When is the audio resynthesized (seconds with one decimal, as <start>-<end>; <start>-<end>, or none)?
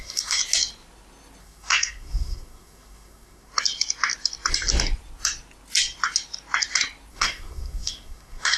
0.0-0.4; 1.4-3.5; 7.1-8.6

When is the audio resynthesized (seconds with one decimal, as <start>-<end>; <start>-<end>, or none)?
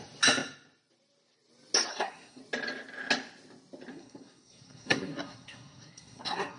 1.9-2.4; 3.9-6.6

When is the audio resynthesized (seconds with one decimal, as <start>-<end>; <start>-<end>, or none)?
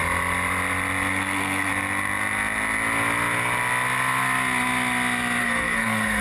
1.1-1.7; 5.4-6.2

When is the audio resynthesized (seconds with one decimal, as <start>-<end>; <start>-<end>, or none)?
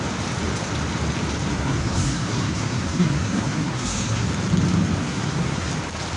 1.5-4.3; 5.0-5.7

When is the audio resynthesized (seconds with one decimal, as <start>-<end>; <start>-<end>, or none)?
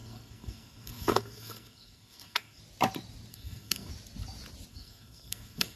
0.0-2.6; 3.3-3.9; 4.7-5.8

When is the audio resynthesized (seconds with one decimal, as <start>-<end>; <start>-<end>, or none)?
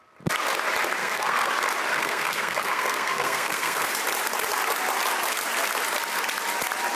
1.0-1.5; 1.9-3.9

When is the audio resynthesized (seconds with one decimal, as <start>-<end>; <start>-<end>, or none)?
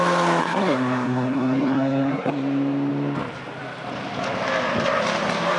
0.4-2.3